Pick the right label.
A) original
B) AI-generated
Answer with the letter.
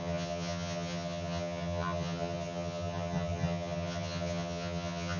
B